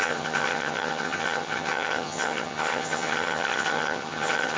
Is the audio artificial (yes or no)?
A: yes